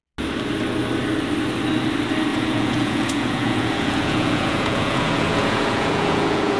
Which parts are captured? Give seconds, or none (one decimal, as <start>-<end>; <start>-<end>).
0.0-2.3